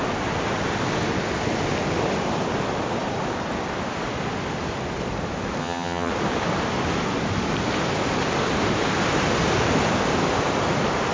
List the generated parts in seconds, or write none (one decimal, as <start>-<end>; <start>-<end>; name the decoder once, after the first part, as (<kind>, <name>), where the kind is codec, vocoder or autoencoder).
5.6-6.1 (vocoder, HiFi-GAN)